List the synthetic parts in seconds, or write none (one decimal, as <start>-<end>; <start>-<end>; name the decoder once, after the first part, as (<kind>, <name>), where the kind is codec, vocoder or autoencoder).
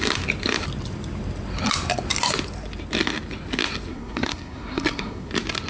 3.9-5.3 (codec, SNAC)